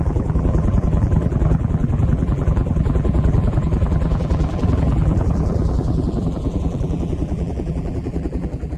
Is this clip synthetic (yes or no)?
yes